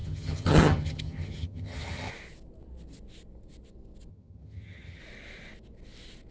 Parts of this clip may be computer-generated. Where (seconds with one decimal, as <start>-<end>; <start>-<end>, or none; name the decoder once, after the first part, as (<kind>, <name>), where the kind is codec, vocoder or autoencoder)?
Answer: 0.0-2.1 (vocoder, HiFi-GAN); 4.1-5.0